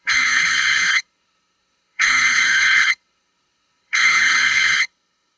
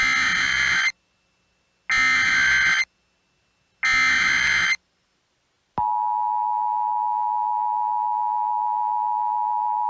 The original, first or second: second